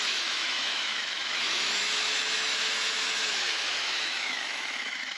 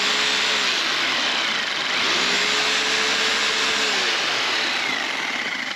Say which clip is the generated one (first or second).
first